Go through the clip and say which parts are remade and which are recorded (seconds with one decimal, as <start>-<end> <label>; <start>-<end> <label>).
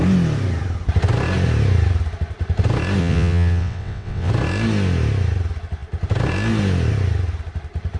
0.0-3.0 recorded; 3.0-4.3 remade; 4.3-8.0 recorded